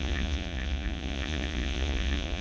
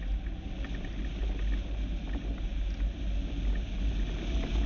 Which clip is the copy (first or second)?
first